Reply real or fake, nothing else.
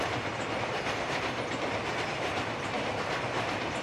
fake